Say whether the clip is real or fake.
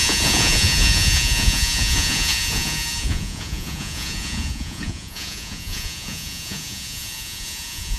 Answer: fake